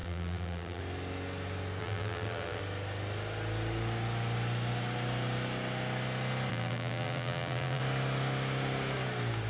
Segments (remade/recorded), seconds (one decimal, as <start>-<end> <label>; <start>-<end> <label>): 0.0-0.8 remade; 0.8-1.8 recorded; 1.8-2.6 remade; 2.6-6.5 recorded; 6.5-7.8 remade; 7.8-9.5 recorded